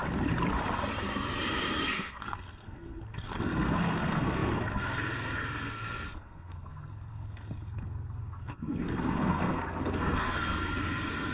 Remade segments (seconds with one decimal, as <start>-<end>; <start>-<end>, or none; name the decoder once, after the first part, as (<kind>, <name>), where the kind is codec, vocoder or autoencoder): 1.8-11.3 (codec, SNAC)